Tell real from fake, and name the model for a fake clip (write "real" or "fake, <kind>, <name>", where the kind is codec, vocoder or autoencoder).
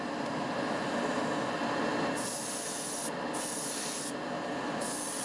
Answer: real